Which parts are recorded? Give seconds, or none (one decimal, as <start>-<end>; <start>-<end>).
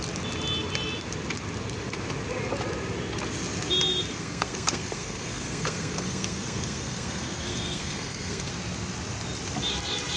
0.0-4.1; 8.5-10.2